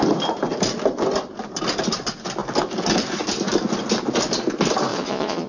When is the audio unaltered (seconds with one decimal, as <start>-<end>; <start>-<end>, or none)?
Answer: 0.0-4.9